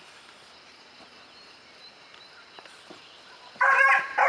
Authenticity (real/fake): fake